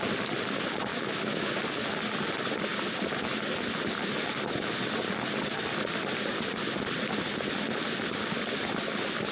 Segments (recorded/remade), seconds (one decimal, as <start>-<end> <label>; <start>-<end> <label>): 0.0-0.9 recorded; 0.9-1.6 remade; 1.6-9.3 recorded